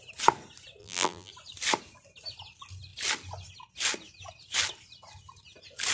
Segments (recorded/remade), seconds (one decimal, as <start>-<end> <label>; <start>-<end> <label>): 0.0-0.8 recorded; 0.8-1.3 remade; 1.3-5.9 recorded